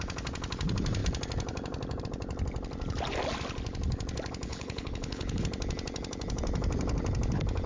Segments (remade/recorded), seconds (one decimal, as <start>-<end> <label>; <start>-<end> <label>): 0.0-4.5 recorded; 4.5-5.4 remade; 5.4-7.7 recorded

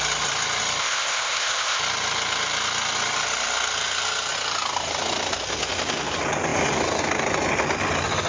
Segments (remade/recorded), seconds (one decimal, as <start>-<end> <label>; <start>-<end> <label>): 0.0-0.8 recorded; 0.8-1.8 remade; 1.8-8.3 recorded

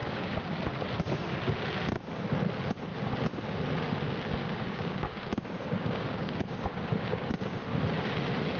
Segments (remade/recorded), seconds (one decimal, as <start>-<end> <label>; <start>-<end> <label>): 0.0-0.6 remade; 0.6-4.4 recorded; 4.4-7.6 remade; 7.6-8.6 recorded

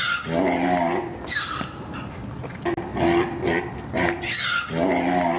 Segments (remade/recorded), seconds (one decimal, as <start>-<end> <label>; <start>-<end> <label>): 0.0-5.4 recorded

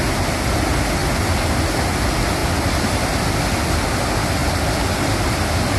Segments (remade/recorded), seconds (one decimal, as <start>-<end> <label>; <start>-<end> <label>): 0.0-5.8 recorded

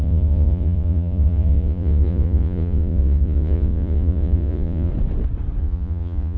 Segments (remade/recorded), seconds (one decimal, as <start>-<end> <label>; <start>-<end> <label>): 0.0-4.9 remade; 4.9-5.6 recorded; 5.6-6.4 remade

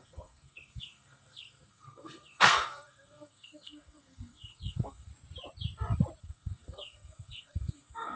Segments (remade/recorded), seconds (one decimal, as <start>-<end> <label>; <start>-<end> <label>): 0.0-5.1 remade; 5.1-6.2 recorded; 6.2-8.2 remade

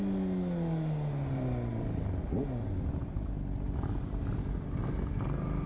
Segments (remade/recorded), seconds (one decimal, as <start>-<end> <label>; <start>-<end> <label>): 0.0-5.7 recorded